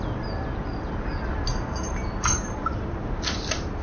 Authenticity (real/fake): real